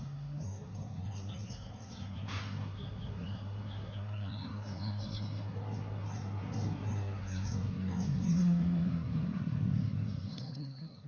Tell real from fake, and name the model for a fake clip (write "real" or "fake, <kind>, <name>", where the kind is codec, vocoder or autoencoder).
fake, codec, SNAC